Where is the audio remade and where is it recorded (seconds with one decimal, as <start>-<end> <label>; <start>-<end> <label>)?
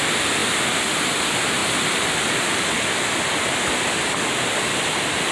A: 0.0-5.3 recorded